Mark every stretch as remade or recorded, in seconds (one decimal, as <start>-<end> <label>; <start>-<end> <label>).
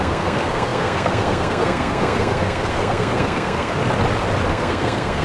0.0-3.8 remade; 3.8-4.5 recorded; 4.5-5.2 remade